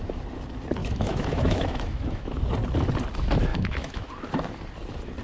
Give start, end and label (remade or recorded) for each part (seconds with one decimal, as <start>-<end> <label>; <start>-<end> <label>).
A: 0.0-0.8 recorded; 0.8-2.4 remade; 2.4-3.5 recorded; 3.5-4.1 remade; 4.1-5.2 recorded